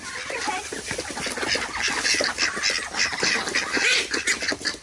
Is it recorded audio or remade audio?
recorded